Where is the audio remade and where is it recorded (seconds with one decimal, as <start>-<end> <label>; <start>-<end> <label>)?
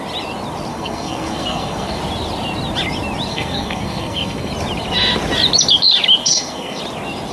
0.0-0.7 recorded; 0.7-2.0 remade; 2.0-3.3 recorded; 3.3-4.5 remade; 4.5-6.2 recorded; 6.2-6.8 remade; 6.8-7.3 recorded